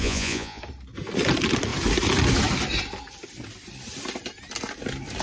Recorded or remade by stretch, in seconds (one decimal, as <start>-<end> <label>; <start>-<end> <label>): 0.0-0.6 remade; 0.6-5.2 recorded